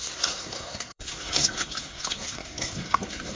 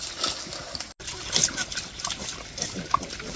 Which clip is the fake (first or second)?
first